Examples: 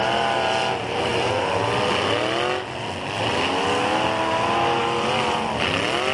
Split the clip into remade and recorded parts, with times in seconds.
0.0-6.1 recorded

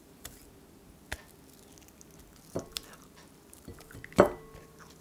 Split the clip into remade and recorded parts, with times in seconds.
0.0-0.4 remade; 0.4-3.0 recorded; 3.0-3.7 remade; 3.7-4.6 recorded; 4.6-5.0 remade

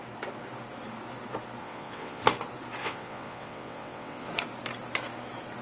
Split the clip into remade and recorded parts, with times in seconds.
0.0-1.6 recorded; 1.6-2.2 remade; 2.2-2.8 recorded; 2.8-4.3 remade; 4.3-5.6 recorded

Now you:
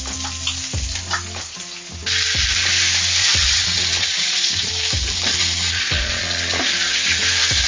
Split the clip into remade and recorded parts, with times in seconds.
0.0-3.2 recorded; 3.2-4.7 remade; 4.7-5.4 recorded; 5.4-6.6 remade; 6.6-7.7 recorded

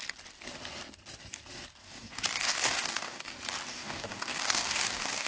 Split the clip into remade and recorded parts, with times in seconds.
0.0-1.8 recorded; 1.8-3.3 remade; 3.3-3.7 recorded; 3.7-5.3 remade

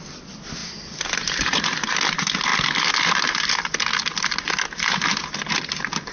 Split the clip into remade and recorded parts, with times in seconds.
0.0-6.1 recorded